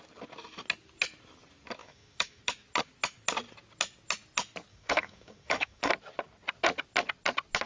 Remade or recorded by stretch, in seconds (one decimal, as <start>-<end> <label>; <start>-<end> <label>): 0.0-1.8 recorded; 1.8-2.4 remade; 2.4-4.7 recorded; 4.7-5.9 remade; 5.9-7.7 recorded